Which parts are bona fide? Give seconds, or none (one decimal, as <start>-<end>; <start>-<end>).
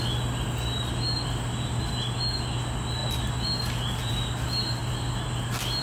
0.0-5.8